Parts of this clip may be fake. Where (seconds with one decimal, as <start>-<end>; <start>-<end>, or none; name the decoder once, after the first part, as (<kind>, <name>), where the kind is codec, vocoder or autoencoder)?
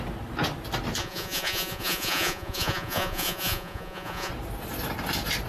1.0-4.3 (vocoder, Vocos)